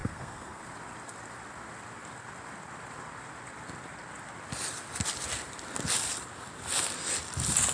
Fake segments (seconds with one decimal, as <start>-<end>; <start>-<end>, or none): 0.0-0.6